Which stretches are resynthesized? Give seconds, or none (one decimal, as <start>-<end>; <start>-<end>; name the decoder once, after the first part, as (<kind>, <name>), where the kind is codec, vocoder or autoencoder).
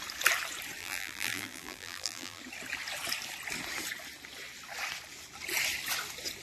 0.8-2.4 (vocoder, BigVGAN v2)